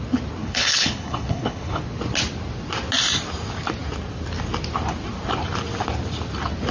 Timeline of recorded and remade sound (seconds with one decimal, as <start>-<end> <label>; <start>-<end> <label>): 0.0-0.4 recorded; 0.4-1.8 remade; 1.8-6.7 recorded